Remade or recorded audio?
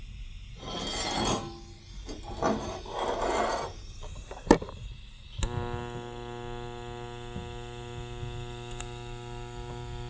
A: recorded